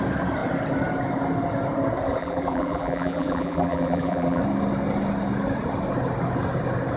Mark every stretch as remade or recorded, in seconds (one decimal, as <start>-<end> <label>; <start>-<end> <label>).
0.0-2.2 recorded; 2.2-4.4 remade; 4.4-7.0 recorded